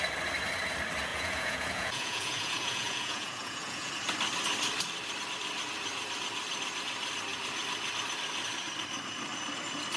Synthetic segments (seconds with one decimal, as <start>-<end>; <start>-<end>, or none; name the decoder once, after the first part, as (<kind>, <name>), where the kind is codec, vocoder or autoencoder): 1.1-3.9 (vocoder, Vocos)